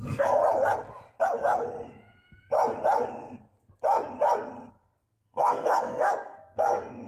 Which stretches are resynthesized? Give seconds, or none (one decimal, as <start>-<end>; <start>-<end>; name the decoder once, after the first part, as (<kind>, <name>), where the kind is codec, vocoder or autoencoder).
0.0-0.4 (codec, SNAC); 4.7-7.1